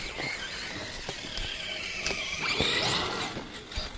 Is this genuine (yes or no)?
yes